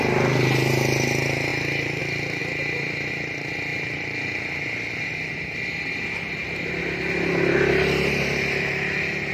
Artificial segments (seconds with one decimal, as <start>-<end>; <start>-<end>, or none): none